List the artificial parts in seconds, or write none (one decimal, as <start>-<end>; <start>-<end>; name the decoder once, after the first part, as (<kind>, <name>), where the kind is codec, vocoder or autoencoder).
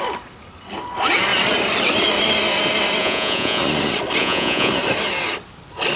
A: 3.0-3.6 (vocoder, Vocos); 4.2-4.7